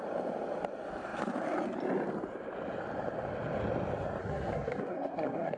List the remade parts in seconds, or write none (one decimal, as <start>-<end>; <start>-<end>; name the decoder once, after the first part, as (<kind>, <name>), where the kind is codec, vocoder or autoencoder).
4.2-5.6 (codec, SNAC)